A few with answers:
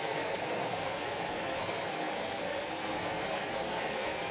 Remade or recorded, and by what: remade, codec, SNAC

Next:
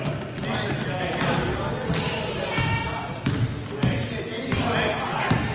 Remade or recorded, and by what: recorded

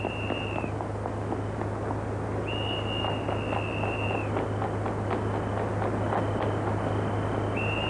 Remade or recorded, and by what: recorded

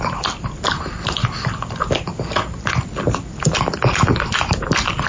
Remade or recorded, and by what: recorded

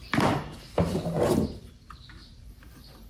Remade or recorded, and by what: remade, vocoder, BigVGAN v2